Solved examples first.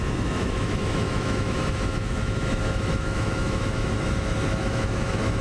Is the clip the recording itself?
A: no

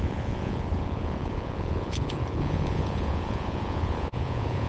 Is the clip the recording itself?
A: no